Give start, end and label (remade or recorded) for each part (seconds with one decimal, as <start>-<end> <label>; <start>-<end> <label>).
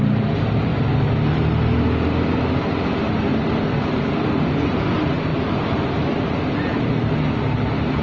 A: 0.0-5.3 recorded; 5.3-6.3 remade; 6.3-8.0 recorded